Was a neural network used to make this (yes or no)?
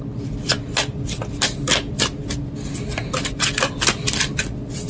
no